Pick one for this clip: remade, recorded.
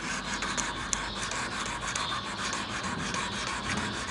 recorded